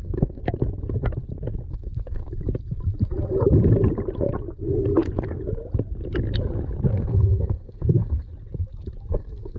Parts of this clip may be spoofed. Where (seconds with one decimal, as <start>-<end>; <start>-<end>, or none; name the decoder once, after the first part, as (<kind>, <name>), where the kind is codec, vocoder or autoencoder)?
0.0-0.4 (codec, SNAC); 1.7-2.2; 6.9-8.3; 9.1-9.6